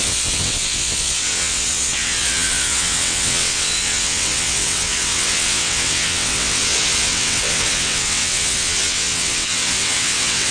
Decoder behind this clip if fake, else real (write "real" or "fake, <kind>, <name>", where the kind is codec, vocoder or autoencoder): fake, vocoder, WaveNeXt